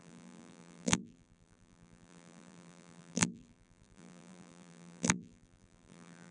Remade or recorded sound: remade